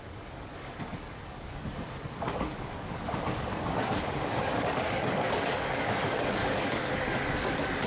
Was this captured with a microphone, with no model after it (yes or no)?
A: no